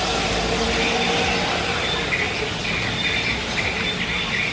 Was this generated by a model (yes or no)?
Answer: no